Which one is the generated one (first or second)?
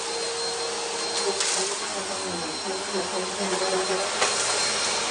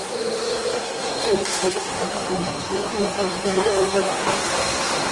second